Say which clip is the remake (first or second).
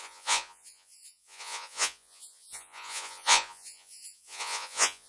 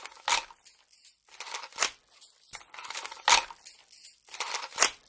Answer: first